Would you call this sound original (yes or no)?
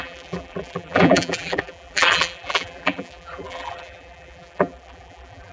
no